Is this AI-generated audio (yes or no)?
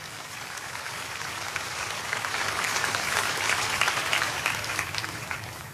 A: yes